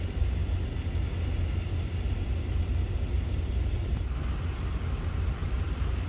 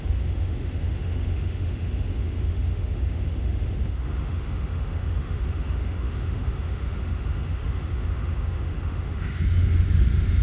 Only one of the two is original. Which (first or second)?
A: first